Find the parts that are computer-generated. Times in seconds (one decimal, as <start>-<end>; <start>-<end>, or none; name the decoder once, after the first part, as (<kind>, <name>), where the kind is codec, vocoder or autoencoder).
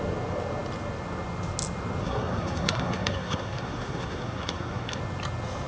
2.0-5.0 (codec, SNAC)